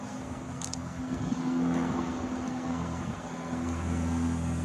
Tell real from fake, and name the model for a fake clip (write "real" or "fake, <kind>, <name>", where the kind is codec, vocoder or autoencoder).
fake, codec, SNAC